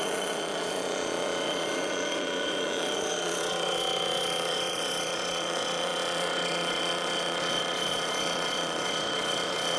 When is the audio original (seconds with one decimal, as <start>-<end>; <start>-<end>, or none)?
none